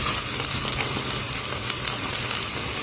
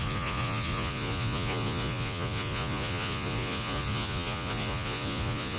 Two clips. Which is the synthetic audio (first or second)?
second